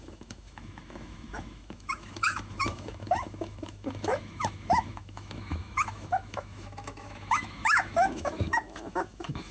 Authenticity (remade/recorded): remade